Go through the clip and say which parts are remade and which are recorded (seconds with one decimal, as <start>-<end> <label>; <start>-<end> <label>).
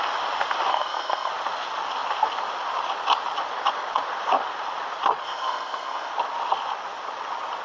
0.0-0.7 recorded; 0.7-1.3 remade; 1.3-5.2 recorded; 5.2-6.1 remade; 6.1-7.6 recorded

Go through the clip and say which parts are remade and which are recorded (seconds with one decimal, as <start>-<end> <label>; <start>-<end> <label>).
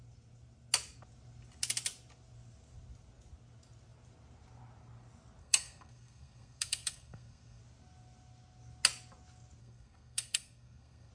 0.0-5.4 recorded; 5.4-7.6 remade; 7.6-9.6 recorded; 9.6-11.1 remade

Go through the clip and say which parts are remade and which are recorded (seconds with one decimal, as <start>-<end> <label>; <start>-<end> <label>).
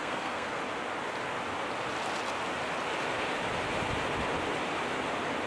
0.0-0.6 remade; 0.6-5.5 recorded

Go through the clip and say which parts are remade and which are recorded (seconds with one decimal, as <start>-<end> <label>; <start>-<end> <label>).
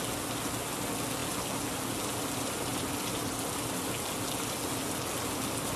0.0-5.8 recorded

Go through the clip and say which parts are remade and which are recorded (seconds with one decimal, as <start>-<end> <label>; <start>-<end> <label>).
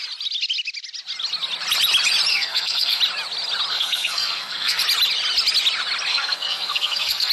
0.0-2.3 recorded; 2.3-3.0 remade; 3.0-3.7 recorded; 3.7-4.8 remade; 4.8-6.1 recorded; 6.1-7.3 remade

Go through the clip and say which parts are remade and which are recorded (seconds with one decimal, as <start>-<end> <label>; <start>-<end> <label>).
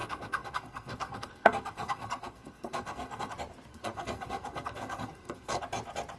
0.0-3.3 remade; 3.3-3.7 recorded; 3.7-5.6 remade; 5.6-6.2 recorded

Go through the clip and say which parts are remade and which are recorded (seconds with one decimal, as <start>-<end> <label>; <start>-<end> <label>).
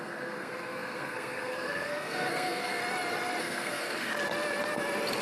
0.0-2.8 remade; 2.8-3.4 recorded; 3.4-4.1 remade; 4.1-5.2 recorded